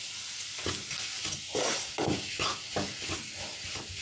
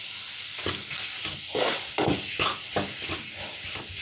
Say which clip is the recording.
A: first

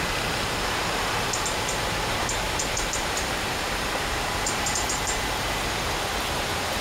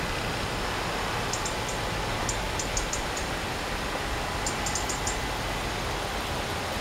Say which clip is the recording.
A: second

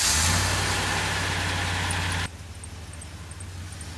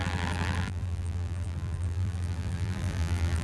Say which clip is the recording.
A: first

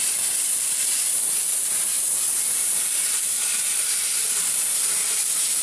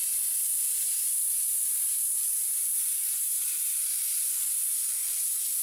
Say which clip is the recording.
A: second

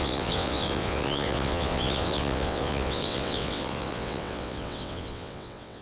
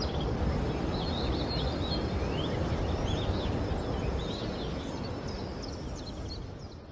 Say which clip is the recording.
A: second